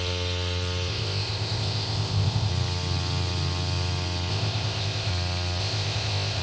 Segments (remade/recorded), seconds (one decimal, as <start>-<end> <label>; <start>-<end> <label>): 0.0-0.9 recorded; 0.9-2.5 remade; 2.5-4.3 recorded; 4.3-5.1 remade; 5.1-5.6 recorded; 5.6-6.4 remade